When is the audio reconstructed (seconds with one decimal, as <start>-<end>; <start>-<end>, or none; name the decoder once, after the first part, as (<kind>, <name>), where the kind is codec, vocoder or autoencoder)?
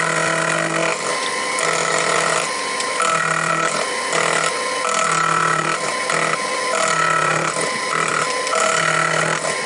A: none